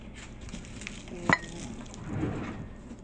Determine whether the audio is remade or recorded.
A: recorded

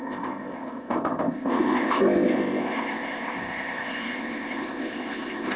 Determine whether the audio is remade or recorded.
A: remade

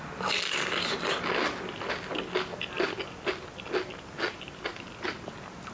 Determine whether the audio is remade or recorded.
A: recorded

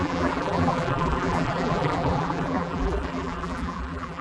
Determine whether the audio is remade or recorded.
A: remade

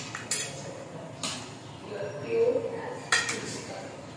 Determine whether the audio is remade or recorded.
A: recorded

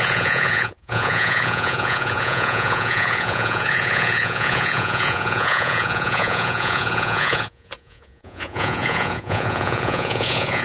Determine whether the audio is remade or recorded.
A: remade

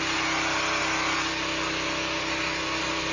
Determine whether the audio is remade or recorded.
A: recorded